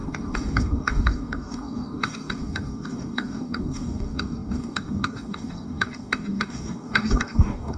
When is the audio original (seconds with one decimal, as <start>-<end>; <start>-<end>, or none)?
none